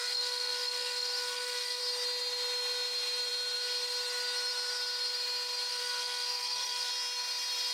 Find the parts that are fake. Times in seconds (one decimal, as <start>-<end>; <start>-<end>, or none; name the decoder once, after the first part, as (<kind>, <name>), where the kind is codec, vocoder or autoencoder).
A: 0.0-1.8 (codec, SNAC); 5.7-6.9

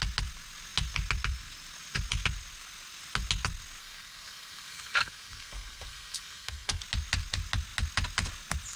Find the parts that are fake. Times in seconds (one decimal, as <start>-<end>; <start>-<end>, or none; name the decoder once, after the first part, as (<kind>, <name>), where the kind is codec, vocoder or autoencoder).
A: 3.8-6.8 (codec, SNAC)